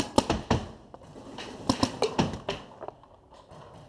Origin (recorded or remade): recorded